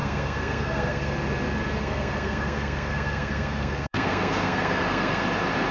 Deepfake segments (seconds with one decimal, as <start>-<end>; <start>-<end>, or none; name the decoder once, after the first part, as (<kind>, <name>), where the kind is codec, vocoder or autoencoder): 0.0-1.1 (codec, SNAC); 1.8-5.2